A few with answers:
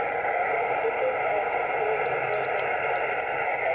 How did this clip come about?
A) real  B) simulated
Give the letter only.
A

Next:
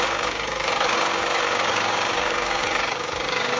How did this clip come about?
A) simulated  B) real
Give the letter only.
A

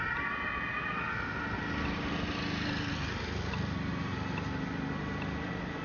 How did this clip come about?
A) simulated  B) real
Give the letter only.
B